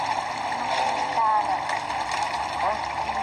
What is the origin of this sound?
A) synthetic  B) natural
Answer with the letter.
B